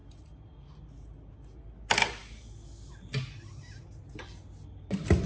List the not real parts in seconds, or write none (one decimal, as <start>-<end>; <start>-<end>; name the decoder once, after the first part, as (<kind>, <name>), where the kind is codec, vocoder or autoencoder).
none